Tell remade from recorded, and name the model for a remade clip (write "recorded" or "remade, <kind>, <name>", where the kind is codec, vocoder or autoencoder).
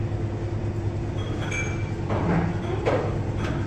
recorded